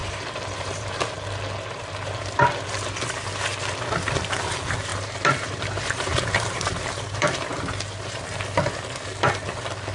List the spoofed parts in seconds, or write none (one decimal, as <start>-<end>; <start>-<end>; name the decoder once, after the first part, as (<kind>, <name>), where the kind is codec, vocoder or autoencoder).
0.0-1.0 (vocoder, BigVGAN v2); 4.9-7.6